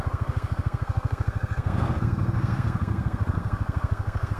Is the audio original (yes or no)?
no